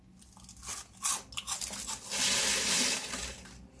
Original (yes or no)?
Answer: yes